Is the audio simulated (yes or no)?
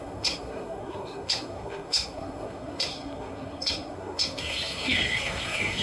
yes